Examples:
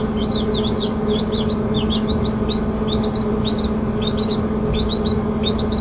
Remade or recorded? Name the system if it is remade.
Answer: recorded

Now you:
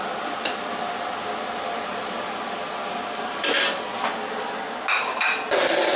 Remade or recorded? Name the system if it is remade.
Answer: recorded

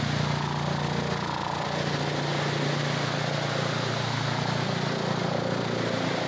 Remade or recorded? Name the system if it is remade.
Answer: recorded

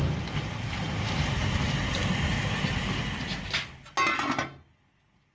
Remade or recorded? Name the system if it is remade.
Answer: recorded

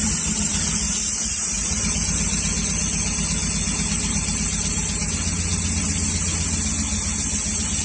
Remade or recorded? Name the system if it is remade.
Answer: recorded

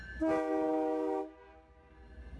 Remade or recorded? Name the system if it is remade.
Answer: recorded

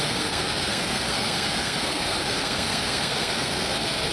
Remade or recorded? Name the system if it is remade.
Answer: remade, codec, SNAC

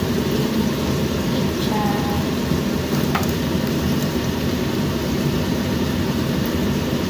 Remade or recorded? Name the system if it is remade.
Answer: remade, vocoder, BigVGAN v2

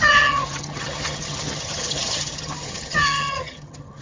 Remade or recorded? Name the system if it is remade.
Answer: remade, vocoder, HiFi-GAN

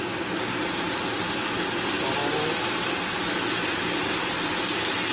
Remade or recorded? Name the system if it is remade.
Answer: recorded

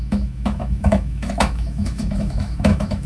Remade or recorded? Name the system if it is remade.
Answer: remade, autoencoder, DAC-VAE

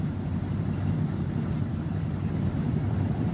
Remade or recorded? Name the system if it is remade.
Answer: remade, vocoder, BigVGAN v2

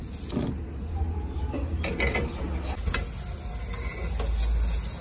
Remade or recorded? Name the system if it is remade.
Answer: recorded